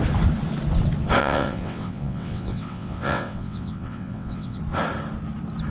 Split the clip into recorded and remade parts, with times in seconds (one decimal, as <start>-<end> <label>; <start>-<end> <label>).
0.0-1.2 recorded; 1.2-4.6 remade; 4.6-5.7 recorded

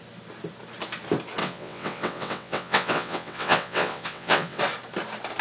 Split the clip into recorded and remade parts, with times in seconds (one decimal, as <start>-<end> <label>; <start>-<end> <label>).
0.0-1.4 recorded; 1.4-4.6 remade; 4.6-5.4 recorded

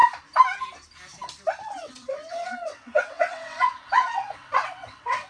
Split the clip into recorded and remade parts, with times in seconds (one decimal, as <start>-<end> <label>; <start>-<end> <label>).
0.0-1.8 recorded; 1.8-5.3 remade

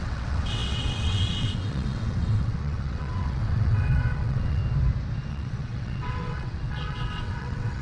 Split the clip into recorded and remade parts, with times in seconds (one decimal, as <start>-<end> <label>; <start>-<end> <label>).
0.0-4.6 remade; 4.6-5.3 recorded; 5.3-7.8 remade

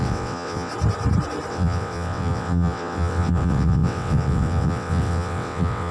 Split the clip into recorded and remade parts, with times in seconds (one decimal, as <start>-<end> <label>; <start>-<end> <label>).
0.0-0.7 remade; 0.7-1.5 recorded; 1.5-5.9 remade

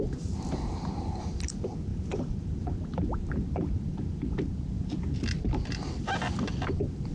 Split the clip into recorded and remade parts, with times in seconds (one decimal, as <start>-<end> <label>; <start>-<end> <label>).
0.0-7.1 recorded

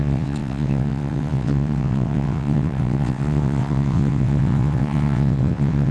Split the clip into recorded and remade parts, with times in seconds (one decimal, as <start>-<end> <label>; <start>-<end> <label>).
0.0-5.9 remade